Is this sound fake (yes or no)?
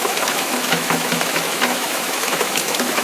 yes